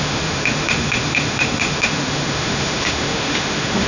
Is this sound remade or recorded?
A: remade